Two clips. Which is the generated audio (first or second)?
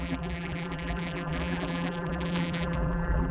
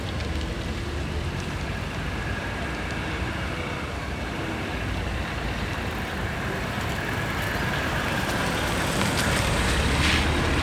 first